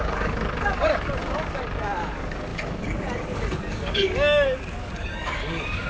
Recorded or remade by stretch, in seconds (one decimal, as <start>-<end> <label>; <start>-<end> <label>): 0.0-5.9 remade